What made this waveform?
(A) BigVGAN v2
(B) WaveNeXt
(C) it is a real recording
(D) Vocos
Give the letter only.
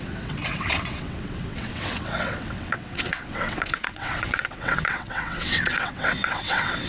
B